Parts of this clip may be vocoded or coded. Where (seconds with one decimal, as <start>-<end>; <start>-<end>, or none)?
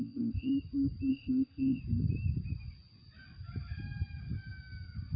0.0-0.5; 1.1-1.8